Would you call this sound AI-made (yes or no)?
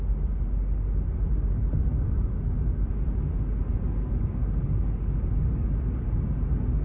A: no